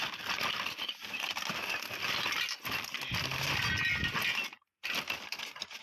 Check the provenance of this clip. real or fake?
real